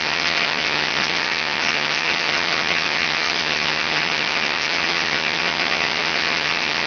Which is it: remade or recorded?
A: remade